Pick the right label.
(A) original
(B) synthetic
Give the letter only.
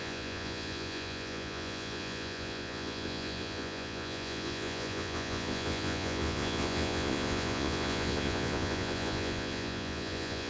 B